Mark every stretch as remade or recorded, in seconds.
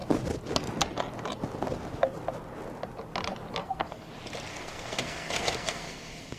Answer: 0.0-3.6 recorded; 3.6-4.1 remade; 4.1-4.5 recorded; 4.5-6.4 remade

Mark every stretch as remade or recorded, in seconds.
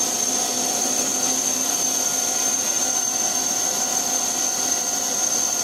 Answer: 0.0-1.1 remade; 1.1-4.5 recorded; 4.5-5.6 remade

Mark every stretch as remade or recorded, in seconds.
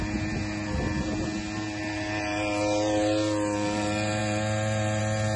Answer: 0.0-5.4 recorded